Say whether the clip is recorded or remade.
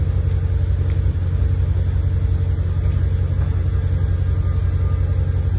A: recorded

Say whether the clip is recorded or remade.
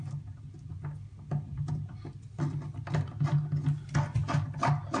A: recorded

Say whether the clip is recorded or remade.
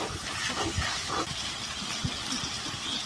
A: recorded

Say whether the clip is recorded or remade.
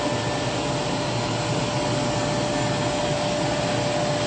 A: recorded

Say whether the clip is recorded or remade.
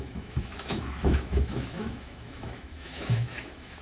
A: remade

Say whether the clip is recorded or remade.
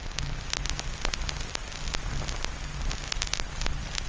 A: recorded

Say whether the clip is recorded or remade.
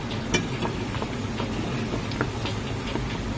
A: recorded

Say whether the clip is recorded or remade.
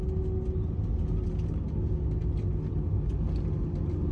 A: recorded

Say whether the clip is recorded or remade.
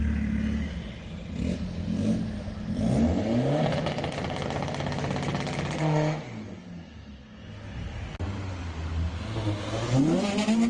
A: recorded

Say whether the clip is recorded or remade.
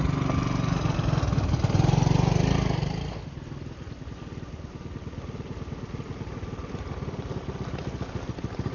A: recorded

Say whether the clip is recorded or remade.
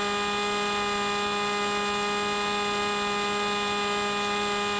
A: recorded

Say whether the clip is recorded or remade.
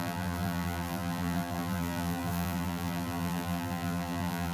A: remade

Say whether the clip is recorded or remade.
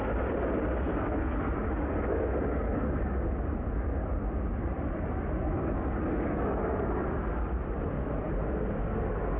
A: recorded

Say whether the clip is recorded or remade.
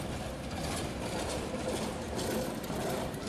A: recorded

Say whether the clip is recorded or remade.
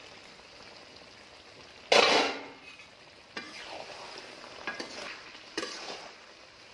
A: recorded